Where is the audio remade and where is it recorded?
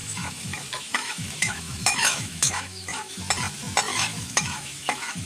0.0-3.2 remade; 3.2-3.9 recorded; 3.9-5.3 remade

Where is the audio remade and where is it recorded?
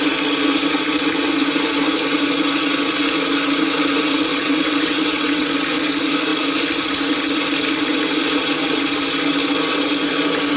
0.0-4.3 recorded; 4.3-5.5 remade; 5.5-10.6 recorded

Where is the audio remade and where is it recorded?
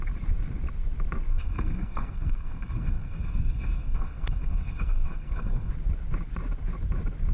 0.0-1.3 recorded; 1.3-5.7 remade; 5.7-7.3 recorded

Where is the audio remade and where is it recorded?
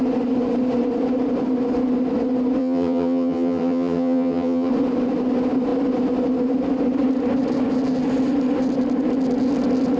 0.0-2.6 recorded; 2.6-4.7 remade; 4.7-10.0 recorded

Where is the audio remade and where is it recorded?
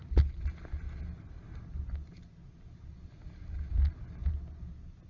0.0-5.1 recorded